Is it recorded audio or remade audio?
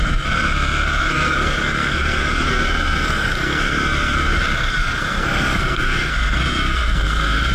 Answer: remade